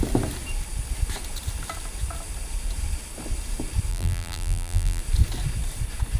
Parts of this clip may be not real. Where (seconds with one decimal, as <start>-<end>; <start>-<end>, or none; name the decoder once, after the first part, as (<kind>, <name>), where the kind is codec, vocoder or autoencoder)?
3.9-5.0 (vocoder, BigVGAN v2)